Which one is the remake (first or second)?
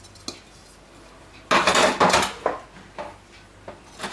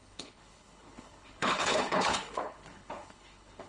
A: second